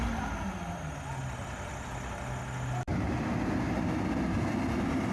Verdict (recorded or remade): recorded